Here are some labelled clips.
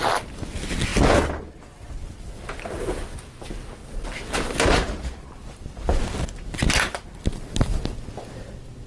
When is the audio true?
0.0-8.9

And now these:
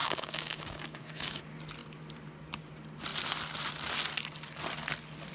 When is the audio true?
1.4-5.3

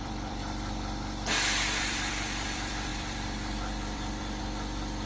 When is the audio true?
0.4-1.8

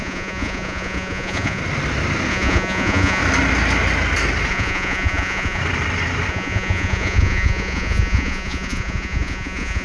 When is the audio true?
1.6-2.3; 3.2-4.5; 5.6-6.3